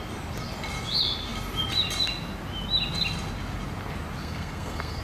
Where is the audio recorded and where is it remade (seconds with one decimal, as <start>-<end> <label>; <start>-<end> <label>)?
0.0-4.2 recorded; 4.2-5.0 remade